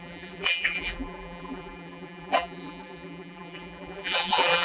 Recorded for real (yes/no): no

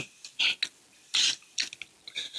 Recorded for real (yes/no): yes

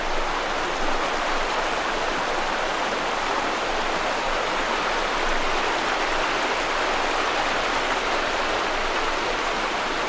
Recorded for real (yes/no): yes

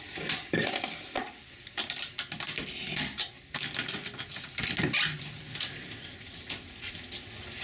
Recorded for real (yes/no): yes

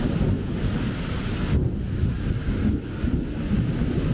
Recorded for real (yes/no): yes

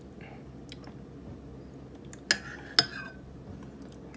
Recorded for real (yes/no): yes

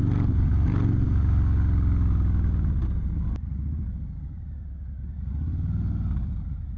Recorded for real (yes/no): yes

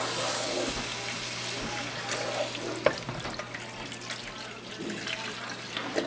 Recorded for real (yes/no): yes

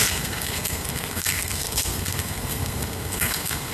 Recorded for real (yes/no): no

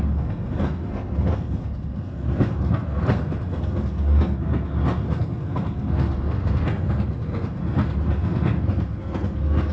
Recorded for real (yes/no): no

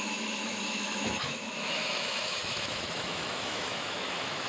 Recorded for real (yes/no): no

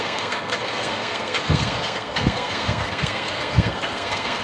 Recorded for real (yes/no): no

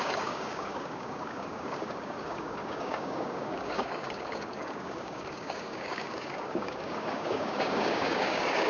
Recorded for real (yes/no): no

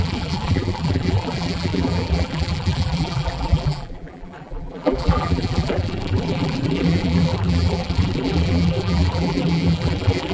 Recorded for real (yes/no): no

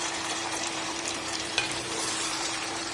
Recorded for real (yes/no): no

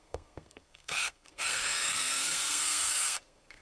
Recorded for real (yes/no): no